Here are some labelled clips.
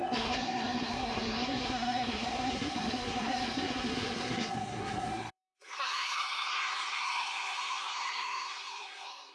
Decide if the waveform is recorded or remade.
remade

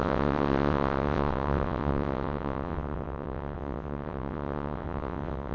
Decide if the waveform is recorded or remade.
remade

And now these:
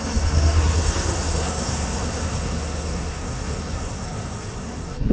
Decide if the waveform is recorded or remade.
remade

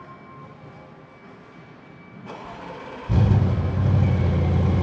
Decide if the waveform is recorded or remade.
recorded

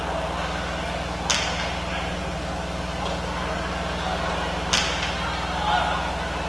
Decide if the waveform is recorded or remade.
recorded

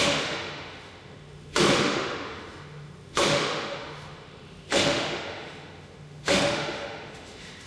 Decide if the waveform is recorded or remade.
remade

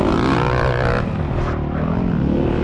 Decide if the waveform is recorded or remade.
recorded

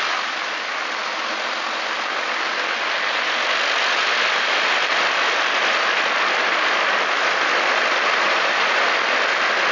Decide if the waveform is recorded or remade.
recorded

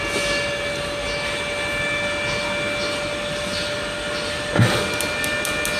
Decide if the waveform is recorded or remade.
recorded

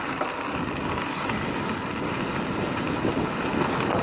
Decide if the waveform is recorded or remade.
recorded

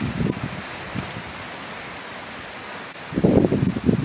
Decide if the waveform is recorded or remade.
recorded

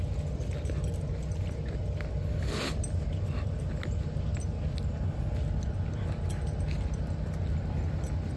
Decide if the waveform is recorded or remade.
recorded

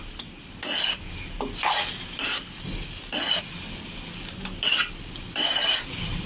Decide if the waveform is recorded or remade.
recorded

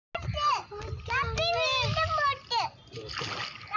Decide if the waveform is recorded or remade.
recorded